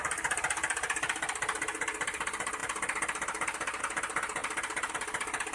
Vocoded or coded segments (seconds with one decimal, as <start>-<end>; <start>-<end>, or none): none

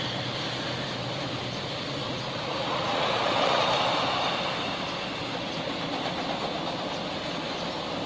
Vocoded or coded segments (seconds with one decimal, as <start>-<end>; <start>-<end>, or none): 2.0-3.7

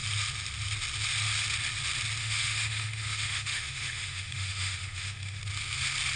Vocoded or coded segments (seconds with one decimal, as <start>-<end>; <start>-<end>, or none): 2.2-5.4

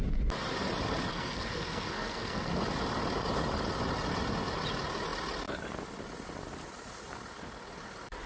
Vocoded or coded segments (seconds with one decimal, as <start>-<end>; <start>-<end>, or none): 1.1-2.6